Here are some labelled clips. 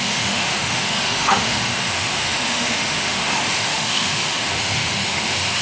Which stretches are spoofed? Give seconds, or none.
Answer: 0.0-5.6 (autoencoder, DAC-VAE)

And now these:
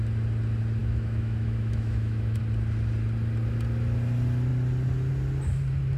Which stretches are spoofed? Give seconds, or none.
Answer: 0.8-2.4 (autoencoder, DAC-VAE)

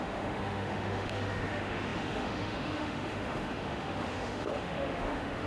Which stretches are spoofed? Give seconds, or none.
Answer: 0.0-5.5 (autoencoder, DAC-VAE)

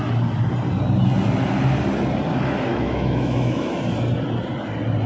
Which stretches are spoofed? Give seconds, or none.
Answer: 2.7-3.7 (autoencoder, DAC-VAE)

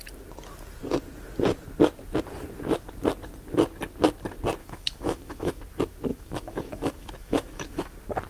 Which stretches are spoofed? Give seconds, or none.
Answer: 4.6-5.6 (autoencoder, DAC-VAE); 6.1-7.9

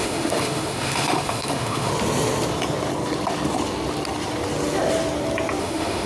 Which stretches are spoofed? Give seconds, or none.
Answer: 0.0-1.9 (autoencoder, DAC-VAE); 5.6-6.1

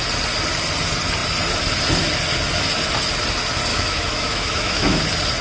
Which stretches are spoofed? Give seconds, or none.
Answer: 3.7-5.0 (autoencoder, DAC-VAE)